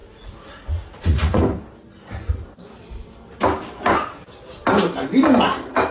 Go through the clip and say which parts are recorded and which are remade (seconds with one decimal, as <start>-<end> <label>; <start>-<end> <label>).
0.0-1.4 remade; 1.4-5.9 recorded